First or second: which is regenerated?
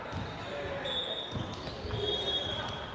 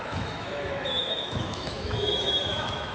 second